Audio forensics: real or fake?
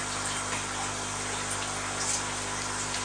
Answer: real